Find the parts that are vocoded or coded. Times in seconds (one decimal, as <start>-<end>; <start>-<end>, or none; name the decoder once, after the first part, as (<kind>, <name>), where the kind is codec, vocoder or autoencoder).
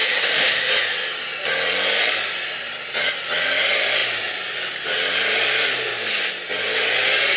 0.0-0.7 (autoencoder, DAC-VAE)